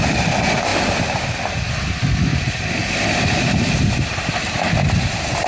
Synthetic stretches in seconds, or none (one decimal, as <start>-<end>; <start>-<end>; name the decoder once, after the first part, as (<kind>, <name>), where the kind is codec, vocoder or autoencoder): 0.0-5.5 (vocoder, BigVGAN v2)